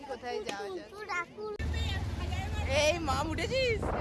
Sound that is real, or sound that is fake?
real